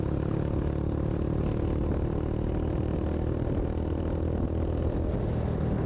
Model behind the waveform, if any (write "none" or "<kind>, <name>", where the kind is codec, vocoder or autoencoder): none